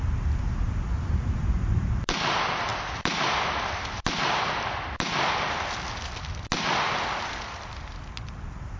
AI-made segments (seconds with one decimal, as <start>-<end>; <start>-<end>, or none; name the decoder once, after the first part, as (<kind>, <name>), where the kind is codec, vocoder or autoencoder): none

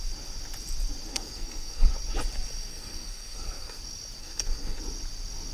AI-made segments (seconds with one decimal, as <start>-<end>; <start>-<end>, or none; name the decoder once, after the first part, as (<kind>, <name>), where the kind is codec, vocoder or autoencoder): 1.1-1.9 (codec, SNAC); 2.7-3.8; 4.2-4.8

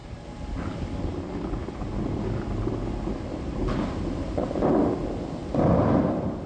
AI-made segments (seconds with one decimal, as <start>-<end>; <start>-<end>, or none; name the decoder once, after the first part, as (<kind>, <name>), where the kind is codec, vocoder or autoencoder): none

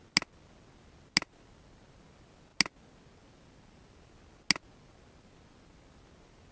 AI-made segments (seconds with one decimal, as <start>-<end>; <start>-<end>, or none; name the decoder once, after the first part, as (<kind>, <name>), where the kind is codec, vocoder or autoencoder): none

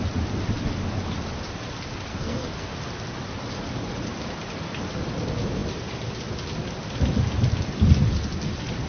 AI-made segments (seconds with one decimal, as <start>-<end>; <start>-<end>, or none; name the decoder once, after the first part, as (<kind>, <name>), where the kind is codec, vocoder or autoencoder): 2.1-2.7 (codec, SNAC)

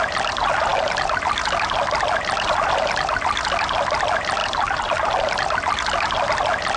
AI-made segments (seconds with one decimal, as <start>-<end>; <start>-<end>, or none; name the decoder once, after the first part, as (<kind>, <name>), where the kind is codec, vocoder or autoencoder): none